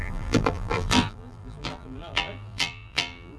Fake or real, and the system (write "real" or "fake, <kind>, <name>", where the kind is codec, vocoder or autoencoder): fake, vocoder, BigVGAN v2